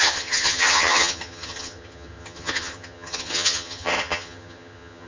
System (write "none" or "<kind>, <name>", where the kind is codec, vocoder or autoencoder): vocoder, HiFi-GAN